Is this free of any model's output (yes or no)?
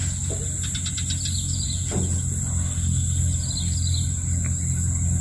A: yes